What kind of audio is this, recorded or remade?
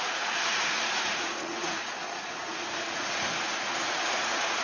remade